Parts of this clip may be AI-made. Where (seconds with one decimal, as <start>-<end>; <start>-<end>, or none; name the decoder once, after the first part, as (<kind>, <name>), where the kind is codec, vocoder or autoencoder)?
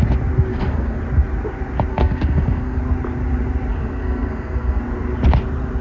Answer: 0.5-1.0 (codec, SNAC); 1.9-2.8; 3.7-4.8